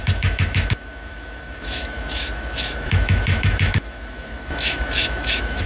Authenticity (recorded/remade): remade